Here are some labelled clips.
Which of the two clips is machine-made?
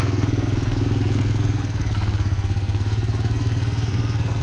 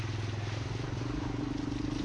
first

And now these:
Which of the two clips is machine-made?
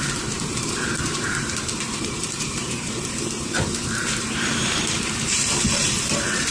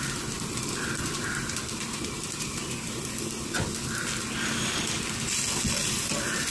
first